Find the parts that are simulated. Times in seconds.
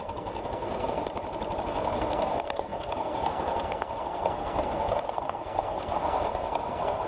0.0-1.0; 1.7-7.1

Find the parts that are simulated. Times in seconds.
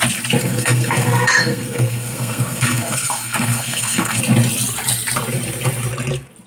0.4-4.2